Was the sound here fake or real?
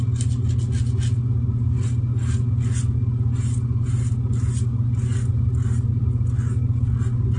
real